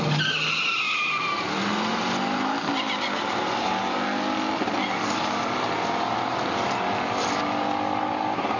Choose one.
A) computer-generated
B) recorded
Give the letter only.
B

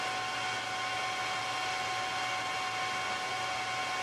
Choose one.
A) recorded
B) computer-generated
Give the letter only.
A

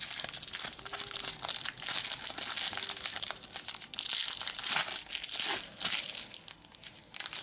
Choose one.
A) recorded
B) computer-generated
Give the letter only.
A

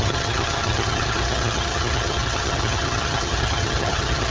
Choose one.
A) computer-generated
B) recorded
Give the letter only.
A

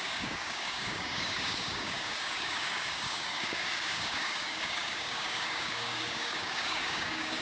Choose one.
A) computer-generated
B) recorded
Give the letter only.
A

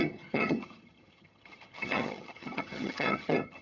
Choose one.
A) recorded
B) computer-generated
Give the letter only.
B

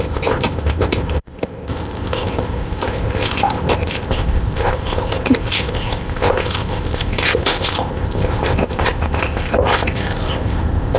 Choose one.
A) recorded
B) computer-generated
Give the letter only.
B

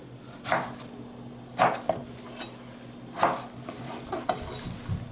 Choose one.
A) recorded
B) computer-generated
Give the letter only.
A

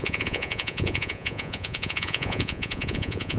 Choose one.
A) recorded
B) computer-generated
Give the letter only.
B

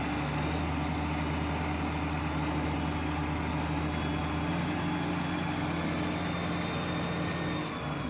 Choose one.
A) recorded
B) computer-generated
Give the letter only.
A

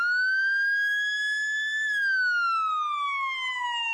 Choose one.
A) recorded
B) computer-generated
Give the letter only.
A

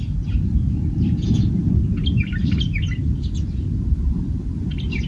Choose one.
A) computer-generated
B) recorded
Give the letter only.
B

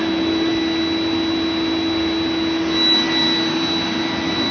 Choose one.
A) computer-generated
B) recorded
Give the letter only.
B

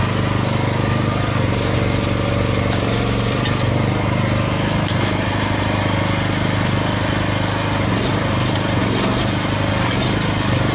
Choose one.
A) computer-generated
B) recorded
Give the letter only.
B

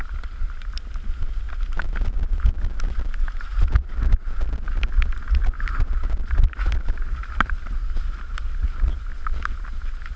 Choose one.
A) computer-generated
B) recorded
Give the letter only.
B